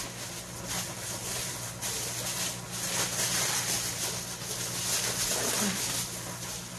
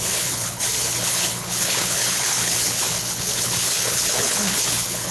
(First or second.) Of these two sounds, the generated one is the second